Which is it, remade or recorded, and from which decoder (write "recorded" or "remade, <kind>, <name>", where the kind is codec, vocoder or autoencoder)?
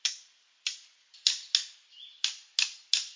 recorded